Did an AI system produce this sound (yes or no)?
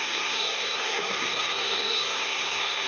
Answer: yes